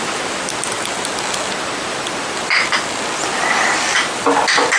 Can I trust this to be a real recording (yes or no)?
yes